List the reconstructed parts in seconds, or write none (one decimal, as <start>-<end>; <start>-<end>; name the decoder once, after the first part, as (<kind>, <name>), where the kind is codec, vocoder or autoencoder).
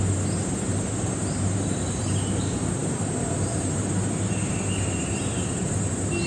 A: none